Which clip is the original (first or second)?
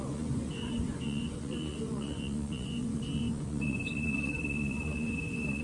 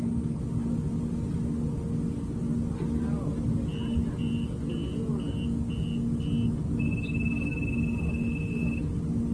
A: second